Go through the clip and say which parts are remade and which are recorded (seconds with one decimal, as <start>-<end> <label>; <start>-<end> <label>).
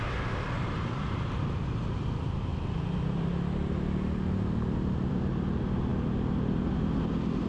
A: 0.0-2.5 remade; 2.5-5.1 recorded; 5.1-5.9 remade; 5.9-6.6 recorded; 6.6-7.5 remade